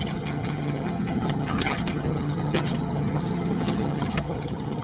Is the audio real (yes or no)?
no